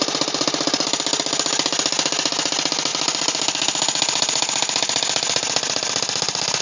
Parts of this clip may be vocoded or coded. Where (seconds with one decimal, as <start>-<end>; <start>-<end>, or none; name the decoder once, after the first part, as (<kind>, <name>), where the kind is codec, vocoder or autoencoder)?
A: none